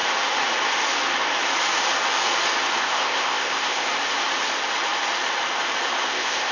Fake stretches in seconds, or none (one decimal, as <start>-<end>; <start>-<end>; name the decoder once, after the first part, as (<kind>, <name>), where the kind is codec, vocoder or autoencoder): 2.8-3.9 (codec, ZipCodec); 6.1-6.5